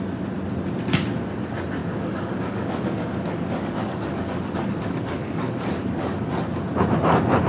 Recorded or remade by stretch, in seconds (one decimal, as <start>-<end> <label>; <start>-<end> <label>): 0.0-1.8 recorded; 1.8-6.3 remade; 6.3-7.5 recorded